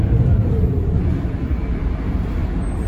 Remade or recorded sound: remade